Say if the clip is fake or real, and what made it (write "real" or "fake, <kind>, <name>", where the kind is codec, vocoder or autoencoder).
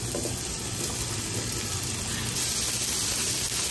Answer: real